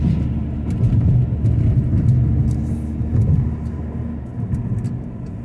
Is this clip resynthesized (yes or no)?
no